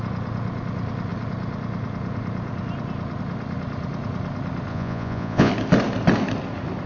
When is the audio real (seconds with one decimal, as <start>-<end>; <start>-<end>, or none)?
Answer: 0.0-4.7; 5.5-6.9